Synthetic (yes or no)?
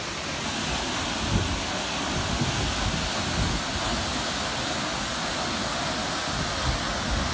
no